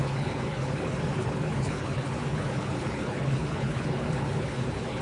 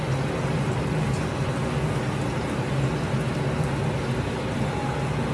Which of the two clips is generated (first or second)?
first